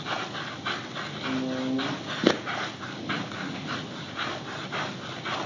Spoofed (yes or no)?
no